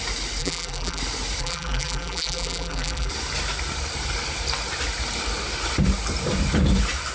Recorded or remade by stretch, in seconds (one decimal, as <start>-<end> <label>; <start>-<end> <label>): 0.0-0.4 recorded; 0.4-1.0 remade; 1.0-1.4 recorded; 1.4-3.1 remade; 3.1-7.1 recorded